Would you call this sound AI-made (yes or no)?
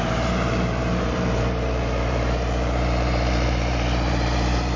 yes